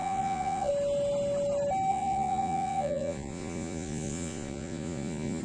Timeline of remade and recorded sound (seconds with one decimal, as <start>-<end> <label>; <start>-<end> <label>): 0.0-0.7 remade; 0.7-1.9 recorded; 1.9-5.4 remade